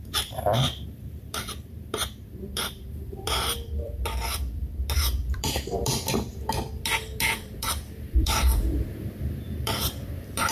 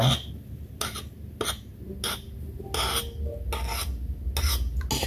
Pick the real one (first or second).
second